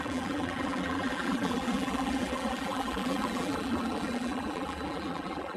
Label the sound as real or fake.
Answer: fake